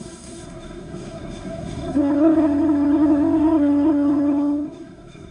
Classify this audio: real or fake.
fake